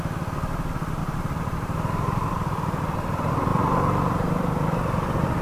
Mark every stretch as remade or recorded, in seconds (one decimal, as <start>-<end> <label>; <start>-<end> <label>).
0.0-1.0 recorded; 1.0-2.5 remade; 2.5-3.5 recorded; 3.5-4.4 remade; 4.4-5.4 recorded